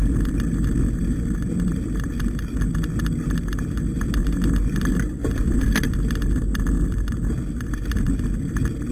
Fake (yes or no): no